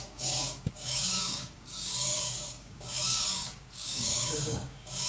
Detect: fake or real fake